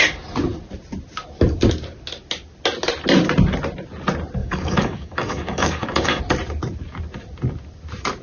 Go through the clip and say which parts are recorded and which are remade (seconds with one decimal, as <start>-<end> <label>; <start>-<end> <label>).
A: 0.0-4.4 recorded; 4.4-6.2 remade; 6.2-8.2 recorded